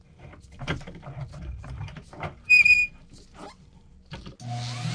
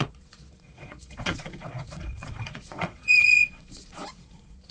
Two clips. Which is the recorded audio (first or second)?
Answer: first